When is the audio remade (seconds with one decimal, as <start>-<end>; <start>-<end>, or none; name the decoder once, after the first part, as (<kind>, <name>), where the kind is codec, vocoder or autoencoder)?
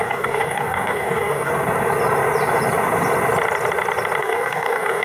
0.0-1.5 (codec, DAC); 4.2-5.0